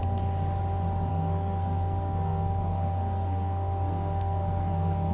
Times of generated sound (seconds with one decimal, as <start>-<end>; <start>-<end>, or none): 1.1-5.1